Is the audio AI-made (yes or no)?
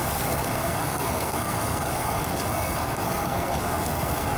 yes